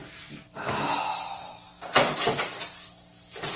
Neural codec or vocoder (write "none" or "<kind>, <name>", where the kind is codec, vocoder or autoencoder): none